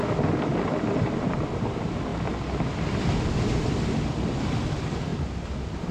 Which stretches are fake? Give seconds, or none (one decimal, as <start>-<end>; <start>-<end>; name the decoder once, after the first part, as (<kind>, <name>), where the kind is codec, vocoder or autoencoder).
none